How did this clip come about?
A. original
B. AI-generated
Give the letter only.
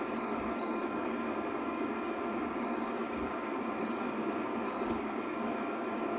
B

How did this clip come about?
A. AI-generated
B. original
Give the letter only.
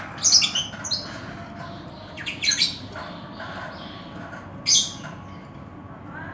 B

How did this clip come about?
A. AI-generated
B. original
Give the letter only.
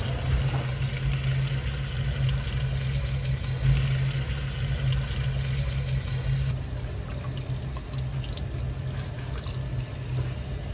B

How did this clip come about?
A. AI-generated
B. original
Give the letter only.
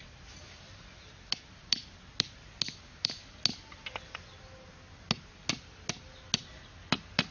B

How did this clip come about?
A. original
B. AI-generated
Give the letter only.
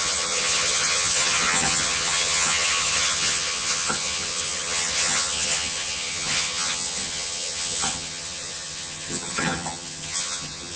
B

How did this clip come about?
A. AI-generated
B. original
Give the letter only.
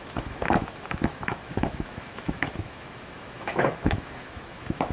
A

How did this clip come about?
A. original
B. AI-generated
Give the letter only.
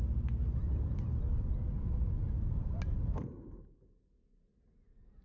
A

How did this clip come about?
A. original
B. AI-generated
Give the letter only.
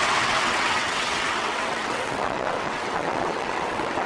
B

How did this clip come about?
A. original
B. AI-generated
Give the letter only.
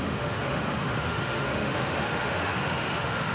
B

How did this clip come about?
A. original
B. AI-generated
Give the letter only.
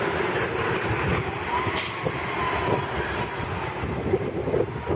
A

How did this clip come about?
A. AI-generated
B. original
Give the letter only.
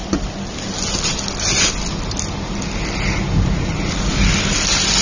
B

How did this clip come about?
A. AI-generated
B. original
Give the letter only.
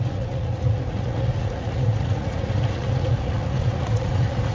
A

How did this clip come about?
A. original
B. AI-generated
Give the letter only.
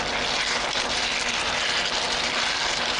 A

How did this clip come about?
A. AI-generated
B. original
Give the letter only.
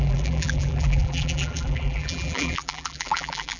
A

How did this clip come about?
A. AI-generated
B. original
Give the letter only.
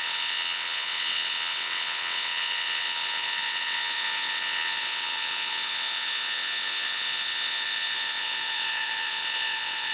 A